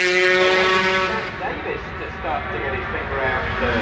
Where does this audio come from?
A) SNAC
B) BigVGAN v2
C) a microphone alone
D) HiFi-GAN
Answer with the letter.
C